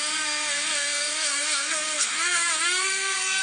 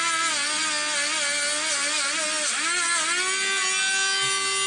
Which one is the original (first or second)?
second